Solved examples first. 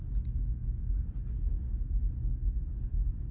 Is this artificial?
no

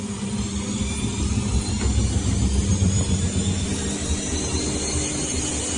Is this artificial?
no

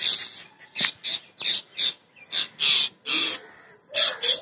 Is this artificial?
no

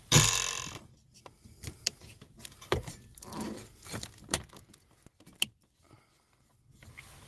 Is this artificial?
no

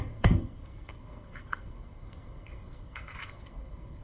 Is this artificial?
yes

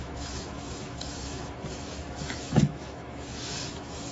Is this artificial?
yes